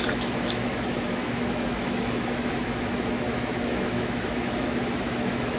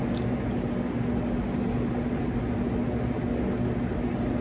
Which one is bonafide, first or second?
second